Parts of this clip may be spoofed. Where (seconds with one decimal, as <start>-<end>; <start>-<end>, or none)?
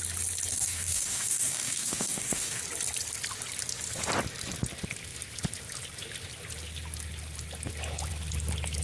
0.5-2.6